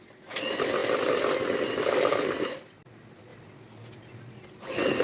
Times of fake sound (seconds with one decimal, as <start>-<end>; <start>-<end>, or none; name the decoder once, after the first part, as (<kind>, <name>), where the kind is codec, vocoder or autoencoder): none